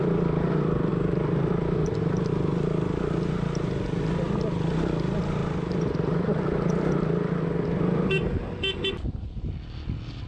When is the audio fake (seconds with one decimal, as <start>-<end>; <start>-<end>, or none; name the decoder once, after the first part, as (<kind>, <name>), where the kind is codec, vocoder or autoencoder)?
0.9-2.3 (vocoder, BigVGAN v2); 5.4-8.4